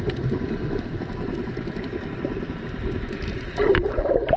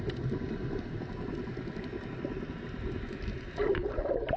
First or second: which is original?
second